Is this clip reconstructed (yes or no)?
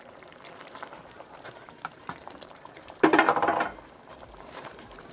yes